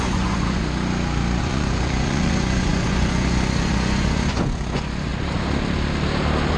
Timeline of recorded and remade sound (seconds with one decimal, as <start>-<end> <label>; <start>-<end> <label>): 0.0-0.6 remade; 0.6-1.4 recorded; 1.4-5.1 remade; 5.1-6.6 recorded